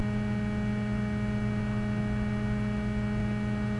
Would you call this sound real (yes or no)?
yes